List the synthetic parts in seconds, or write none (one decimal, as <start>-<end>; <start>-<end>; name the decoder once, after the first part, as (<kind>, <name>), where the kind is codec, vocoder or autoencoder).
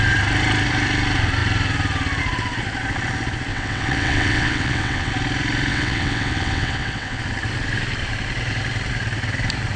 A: 3.5-5.1 (vocoder, WaveNeXt); 5.7-7.2